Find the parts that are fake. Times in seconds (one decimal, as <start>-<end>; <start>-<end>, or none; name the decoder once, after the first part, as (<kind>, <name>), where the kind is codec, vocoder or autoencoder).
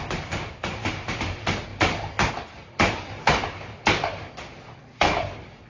none